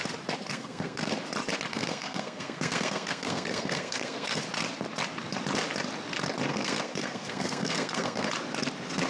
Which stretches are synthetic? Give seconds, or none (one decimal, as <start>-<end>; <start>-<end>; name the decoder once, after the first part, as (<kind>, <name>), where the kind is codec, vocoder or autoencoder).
0.5-1.1 (codec, SNAC); 1.7-4.4; 6.5-8.3